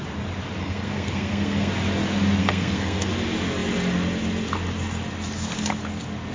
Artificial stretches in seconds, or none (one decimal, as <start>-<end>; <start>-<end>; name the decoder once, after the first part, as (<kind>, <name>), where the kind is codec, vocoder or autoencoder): 0.6-1.7 (codec, SNAC); 2.4-3.1